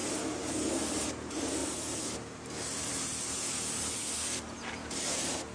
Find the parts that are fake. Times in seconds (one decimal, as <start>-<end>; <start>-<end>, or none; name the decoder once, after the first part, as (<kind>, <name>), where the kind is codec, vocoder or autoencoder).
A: 0.0-0.5 (vocoder, BigVGAN v2); 1.6-4.9

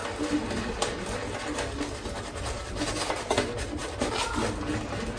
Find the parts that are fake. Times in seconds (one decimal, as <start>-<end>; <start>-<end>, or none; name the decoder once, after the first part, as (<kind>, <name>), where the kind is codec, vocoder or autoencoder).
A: none

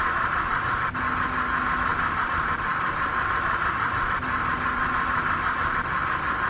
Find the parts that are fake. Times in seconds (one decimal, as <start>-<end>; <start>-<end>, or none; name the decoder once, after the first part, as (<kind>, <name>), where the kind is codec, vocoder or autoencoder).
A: 0.0-1.0 (vocoder, BigVGAN v2); 1.9-5.8